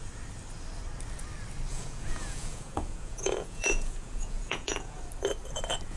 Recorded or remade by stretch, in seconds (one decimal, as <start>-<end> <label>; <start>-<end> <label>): 0.0-1.7 recorded; 1.7-5.0 remade; 5.0-6.0 recorded